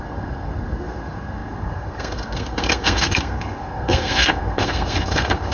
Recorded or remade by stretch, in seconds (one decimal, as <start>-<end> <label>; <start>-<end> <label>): 0.0-5.5 remade